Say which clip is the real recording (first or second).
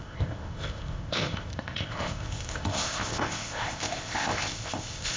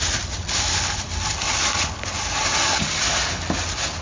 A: second